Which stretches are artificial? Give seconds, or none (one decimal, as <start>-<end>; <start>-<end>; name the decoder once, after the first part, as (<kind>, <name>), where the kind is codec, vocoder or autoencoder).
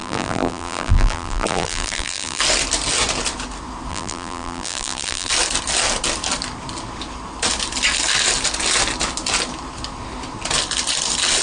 0.0-2.4 (vocoder, BigVGAN v2); 3.9-5.3